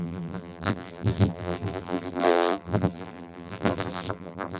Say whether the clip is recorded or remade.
remade